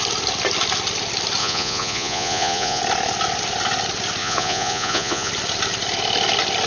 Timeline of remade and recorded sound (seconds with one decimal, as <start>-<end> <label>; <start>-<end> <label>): 0.0-1.4 recorded; 1.4-2.8 remade; 2.8-4.2 recorded; 4.2-5.3 remade; 5.3-6.7 recorded